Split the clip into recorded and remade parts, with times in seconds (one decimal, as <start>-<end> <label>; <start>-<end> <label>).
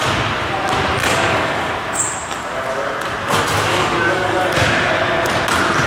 0.0-1.0 recorded; 1.0-1.7 remade; 1.7-3.7 recorded; 3.7-4.4 remade; 4.4-5.9 recorded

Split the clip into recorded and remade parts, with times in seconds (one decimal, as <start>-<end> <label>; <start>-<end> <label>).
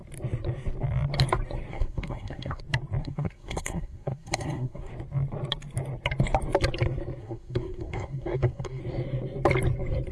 0.0-1.7 recorded; 1.7-2.6 remade; 2.6-3.0 recorded; 3.0-4.9 remade; 4.9-7.2 recorded; 7.2-8.8 remade; 8.8-10.1 recorded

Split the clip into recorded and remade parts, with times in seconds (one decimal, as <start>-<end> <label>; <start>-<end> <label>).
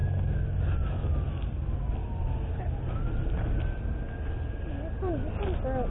0.0-5.9 recorded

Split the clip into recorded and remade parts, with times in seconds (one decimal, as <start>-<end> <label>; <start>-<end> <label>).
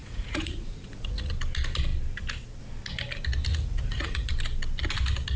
0.0-1.3 remade; 1.3-3.5 recorded; 3.5-4.3 remade; 4.3-5.4 recorded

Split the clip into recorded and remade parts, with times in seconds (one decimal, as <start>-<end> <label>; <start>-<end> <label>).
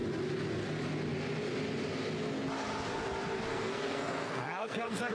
0.0-3.5 recorded; 3.5-5.1 remade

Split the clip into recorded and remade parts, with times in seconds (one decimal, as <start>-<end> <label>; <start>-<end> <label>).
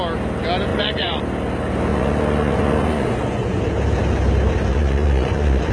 0.0-0.7 recorded; 0.7-1.2 remade; 1.2-1.9 recorded; 1.9-3.6 remade; 3.6-4.7 recorded; 4.7-5.7 remade